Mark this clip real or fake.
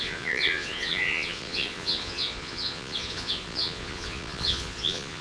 fake